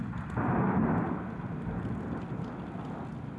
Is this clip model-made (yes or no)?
no